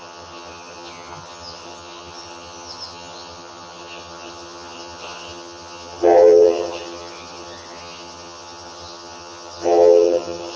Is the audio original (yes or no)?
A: no